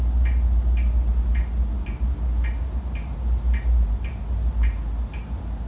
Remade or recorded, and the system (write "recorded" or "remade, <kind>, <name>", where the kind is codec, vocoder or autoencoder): recorded